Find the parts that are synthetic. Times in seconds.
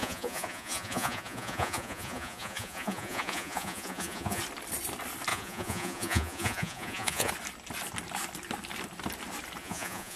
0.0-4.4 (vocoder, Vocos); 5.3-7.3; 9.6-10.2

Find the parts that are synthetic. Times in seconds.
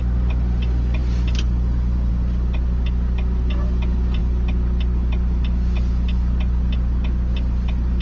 none